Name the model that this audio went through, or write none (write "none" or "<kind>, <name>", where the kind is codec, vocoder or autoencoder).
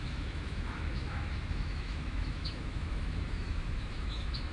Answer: autoencoder, DAC-VAE